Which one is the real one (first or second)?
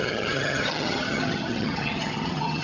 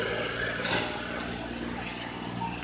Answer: second